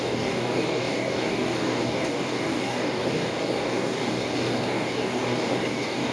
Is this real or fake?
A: fake